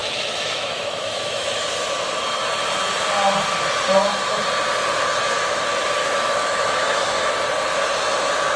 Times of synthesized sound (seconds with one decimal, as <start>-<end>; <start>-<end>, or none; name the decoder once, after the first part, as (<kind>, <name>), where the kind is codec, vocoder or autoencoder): 0.0-1.7 (autoencoder, DAC-VAE); 6.0-7.3